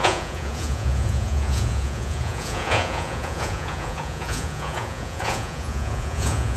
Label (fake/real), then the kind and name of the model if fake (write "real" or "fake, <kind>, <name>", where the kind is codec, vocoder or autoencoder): fake, vocoder, Vocos